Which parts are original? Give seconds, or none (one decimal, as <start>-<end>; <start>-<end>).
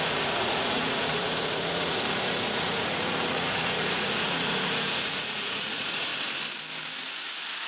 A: 6.1-7.1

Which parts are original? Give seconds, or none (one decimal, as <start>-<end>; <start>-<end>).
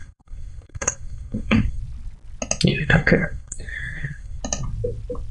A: 1.8-2.8; 4.4-5.3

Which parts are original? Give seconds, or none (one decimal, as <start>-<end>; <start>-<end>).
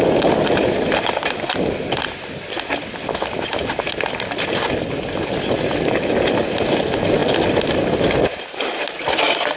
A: 0.0-9.6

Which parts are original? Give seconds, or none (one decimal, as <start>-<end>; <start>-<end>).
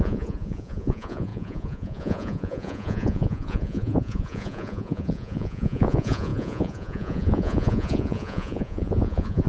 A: none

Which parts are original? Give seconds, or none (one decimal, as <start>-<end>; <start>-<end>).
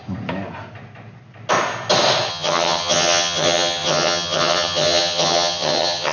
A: 0.0-2.3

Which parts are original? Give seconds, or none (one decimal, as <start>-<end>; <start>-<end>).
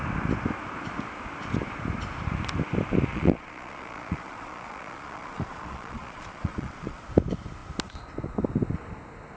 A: 0.0-3.1; 7.0-9.4